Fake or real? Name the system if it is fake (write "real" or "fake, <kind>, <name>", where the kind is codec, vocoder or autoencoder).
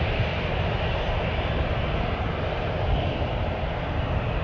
real